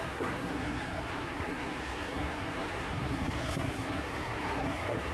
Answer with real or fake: fake